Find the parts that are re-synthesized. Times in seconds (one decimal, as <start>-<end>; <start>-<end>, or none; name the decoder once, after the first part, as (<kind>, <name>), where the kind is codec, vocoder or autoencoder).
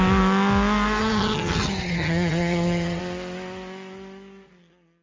1.0-3.0 (vocoder, HiFi-GAN)